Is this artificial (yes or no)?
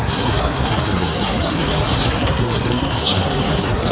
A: yes